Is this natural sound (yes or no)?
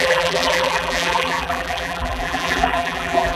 no